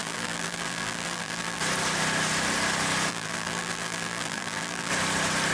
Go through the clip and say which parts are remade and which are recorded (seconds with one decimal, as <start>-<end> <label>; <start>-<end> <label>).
0.0-1.6 remade; 1.6-3.1 recorded; 3.1-4.9 remade; 4.9-5.5 recorded